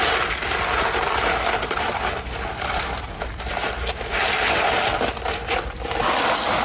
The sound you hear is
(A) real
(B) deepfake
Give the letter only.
A